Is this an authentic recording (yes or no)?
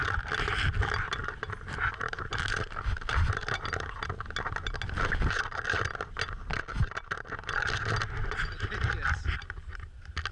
yes